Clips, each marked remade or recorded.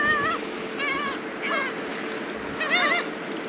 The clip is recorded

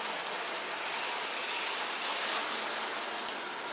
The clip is recorded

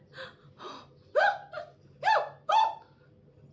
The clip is recorded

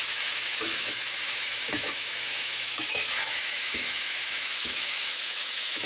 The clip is remade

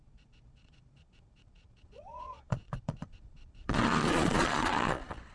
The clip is remade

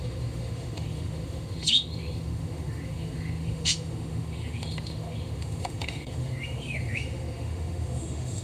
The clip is remade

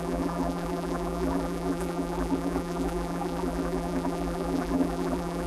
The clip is remade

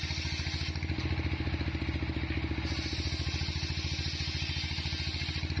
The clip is recorded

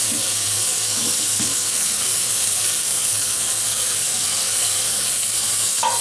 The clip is remade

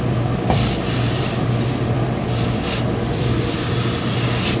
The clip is remade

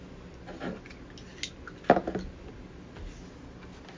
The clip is recorded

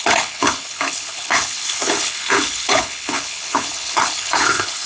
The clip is remade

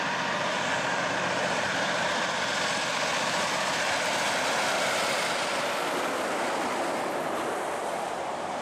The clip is remade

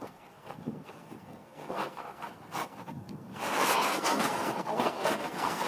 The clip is remade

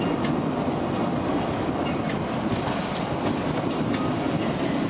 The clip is remade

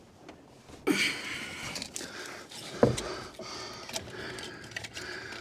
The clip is recorded